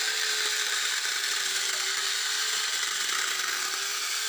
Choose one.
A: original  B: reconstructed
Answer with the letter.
B